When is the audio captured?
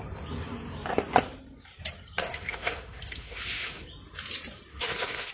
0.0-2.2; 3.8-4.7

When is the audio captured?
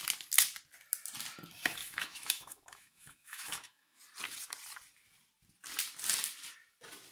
0.0-1.8; 4.0-7.1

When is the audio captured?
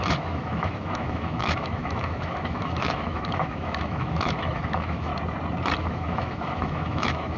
5.1-5.8